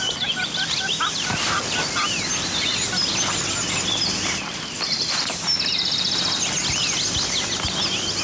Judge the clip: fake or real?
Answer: real